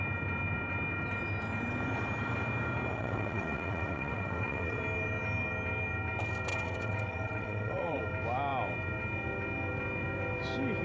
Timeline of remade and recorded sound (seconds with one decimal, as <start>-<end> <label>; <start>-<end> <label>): 0.0-2.9 recorded; 2.9-4.8 remade; 4.8-6.5 recorded; 6.5-8.0 remade; 8.0-10.8 recorded

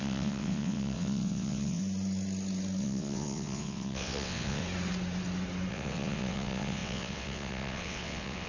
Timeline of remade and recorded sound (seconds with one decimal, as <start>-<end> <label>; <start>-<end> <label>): 0.0-1.8 remade; 1.8-2.8 recorded; 2.8-4.6 remade; 4.6-5.7 recorded; 5.7-8.5 remade

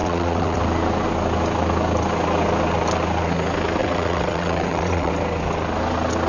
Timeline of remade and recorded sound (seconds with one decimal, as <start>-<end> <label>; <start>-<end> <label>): 0.0-0.6 remade; 0.6-3.8 recorded; 3.8-5.1 remade; 5.1-6.3 recorded

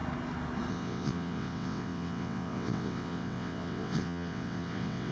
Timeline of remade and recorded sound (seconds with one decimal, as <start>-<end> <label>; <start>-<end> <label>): 0.0-0.7 recorded; 0.7-5.1 remade

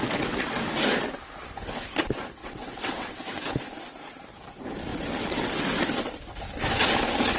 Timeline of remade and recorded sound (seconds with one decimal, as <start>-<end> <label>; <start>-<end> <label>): 0.0-0.6 remade; 0.6-2.4 recorded; 2.4-3.5 remade; 3.5-4.9 recorded; 4.9-5.6 remade; 5.6-7.4 recorded

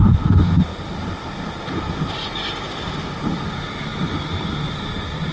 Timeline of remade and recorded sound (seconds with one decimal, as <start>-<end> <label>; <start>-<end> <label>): 0.0-5.3 recorded

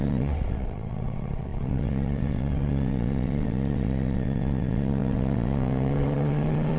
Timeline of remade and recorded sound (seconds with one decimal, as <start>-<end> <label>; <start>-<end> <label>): 0.0-6.8 remade